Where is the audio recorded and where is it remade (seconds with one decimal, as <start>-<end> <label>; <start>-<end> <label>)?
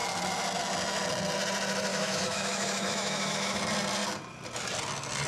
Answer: 0.0-1.9 recorded; 1.9-3.6 remade; 3.6-5.3 recorded